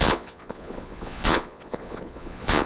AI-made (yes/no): yes